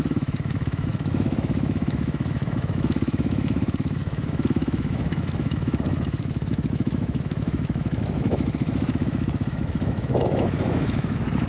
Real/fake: fake